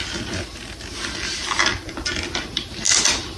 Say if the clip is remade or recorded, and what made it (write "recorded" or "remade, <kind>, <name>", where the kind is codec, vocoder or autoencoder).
recorded